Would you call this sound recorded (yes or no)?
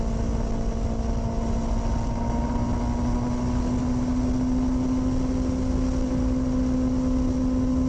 yes